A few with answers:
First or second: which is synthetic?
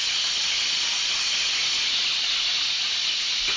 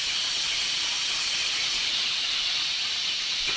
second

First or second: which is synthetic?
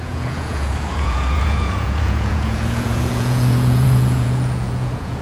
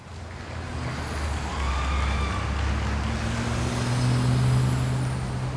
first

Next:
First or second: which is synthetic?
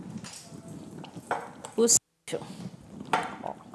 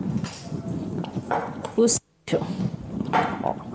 second